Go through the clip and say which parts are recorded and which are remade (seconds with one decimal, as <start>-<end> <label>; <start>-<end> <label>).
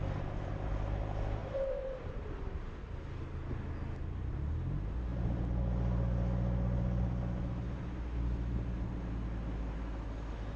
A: 0.0-1.4 recorded; 1.4-2.7 remade; 2.7-10.6 recorded